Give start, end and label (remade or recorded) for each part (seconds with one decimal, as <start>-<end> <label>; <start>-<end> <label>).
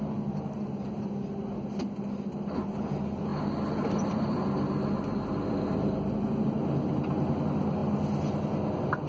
0.0-9.1 recorded